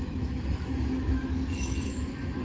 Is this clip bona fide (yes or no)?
no